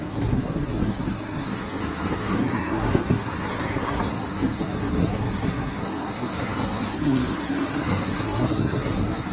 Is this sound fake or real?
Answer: fake